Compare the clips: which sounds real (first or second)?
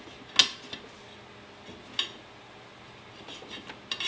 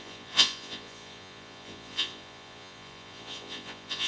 first